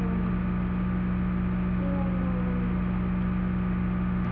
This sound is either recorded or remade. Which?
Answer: recorded